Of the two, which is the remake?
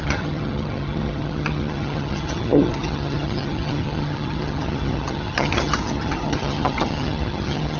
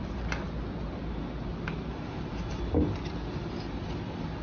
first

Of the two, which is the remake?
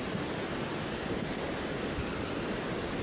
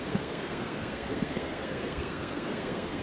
second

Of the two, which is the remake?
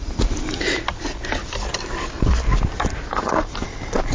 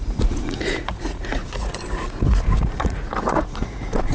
second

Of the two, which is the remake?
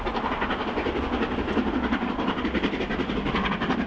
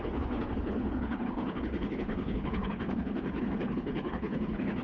second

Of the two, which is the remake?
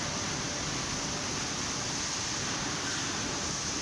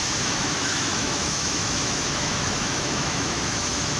second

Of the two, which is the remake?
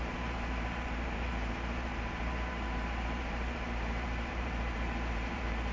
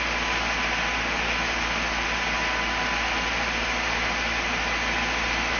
first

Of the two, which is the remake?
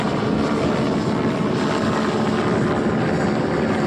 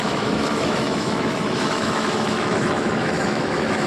second